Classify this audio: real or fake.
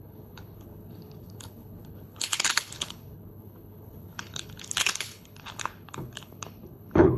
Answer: fake